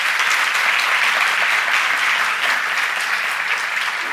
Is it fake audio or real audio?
real